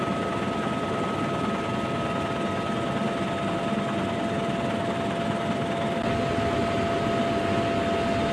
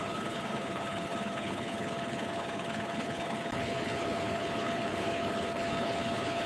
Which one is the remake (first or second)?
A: second